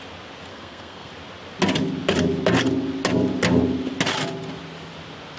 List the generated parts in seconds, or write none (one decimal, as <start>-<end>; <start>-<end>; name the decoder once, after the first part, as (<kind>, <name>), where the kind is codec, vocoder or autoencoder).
0.5-1.1 (codec, SNAC)